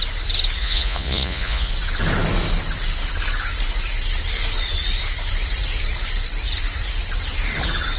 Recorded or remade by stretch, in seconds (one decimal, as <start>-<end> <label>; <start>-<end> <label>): 0.0-0.6 recorded; 0.6-1.7 remade; 1.7-8.0 recorded